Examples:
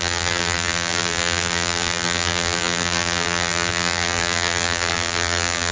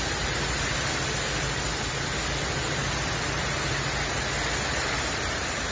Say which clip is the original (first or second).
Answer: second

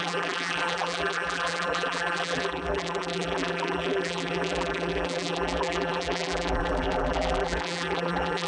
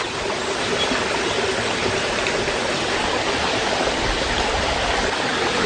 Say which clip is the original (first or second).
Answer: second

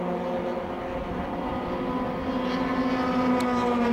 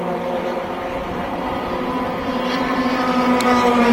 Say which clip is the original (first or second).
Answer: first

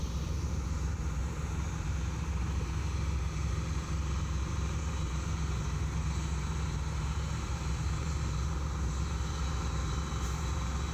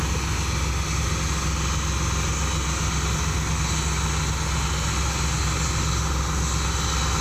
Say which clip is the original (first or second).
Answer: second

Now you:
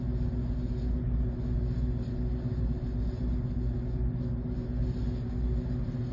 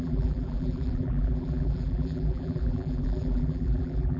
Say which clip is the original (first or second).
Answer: first